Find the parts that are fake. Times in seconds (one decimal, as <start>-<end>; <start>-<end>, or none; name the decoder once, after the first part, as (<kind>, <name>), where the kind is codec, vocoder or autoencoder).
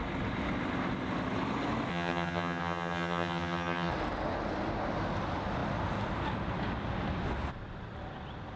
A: 1.9-3.9 (vocoder, HiFi-GAN)